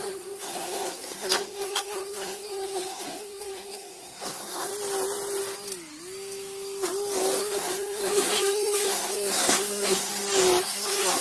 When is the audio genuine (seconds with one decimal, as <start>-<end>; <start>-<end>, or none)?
4.7-7.4; 10.1-10.6